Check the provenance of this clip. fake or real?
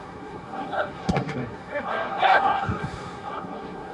fake